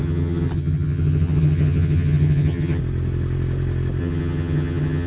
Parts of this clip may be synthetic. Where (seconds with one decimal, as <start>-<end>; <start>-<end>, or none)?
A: 0.0-2.8; 4.0-5.1